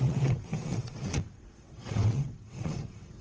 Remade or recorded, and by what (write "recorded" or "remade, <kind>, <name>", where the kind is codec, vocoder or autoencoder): remade, vocoder, WaveNeXt